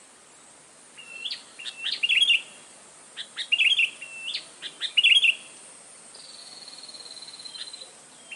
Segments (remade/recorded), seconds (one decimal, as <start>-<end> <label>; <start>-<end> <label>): 0.0-6.4 recorded; 6.4-7.5 remade; 7.5-8.4 recorded